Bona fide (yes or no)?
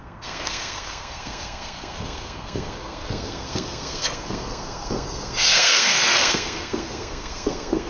no